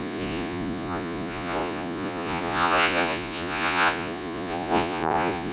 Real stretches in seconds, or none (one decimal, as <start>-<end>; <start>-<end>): none